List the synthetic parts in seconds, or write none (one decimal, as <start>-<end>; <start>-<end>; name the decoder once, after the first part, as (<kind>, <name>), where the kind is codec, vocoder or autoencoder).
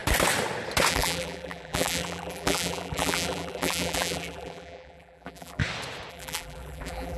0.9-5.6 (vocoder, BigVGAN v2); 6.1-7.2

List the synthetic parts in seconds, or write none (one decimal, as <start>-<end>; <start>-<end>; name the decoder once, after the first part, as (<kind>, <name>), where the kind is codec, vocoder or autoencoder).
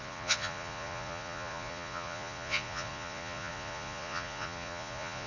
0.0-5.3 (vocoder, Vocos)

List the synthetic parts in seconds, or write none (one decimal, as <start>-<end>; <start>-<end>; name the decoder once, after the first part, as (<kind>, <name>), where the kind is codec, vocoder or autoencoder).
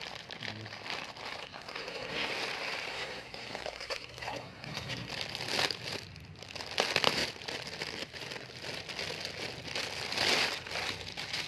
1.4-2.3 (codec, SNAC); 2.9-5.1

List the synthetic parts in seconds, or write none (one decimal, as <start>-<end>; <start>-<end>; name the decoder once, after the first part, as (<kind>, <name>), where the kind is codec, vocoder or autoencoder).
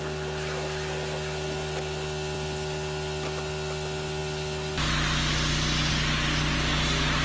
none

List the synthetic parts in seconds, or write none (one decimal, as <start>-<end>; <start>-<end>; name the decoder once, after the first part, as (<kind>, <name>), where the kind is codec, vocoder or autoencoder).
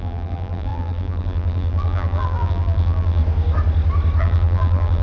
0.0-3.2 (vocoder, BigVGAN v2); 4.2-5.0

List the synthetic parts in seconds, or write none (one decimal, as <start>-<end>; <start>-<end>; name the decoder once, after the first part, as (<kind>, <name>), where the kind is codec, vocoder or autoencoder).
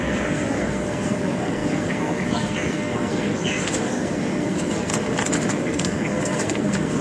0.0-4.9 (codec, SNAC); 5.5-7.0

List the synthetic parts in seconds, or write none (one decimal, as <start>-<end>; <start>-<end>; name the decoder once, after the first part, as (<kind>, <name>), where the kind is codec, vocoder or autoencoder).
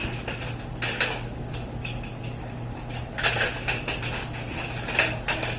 none